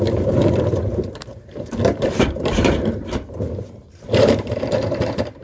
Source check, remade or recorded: remade